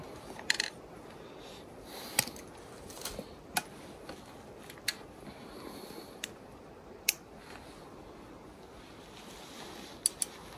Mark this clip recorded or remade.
recorded